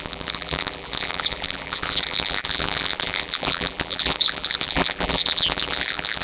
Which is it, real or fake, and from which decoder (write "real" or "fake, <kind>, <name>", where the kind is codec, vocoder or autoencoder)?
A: fake, vocoder, BigVGAN v2